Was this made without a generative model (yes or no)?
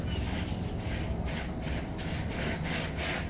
yes